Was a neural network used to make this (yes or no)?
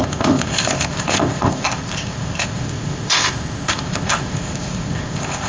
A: yes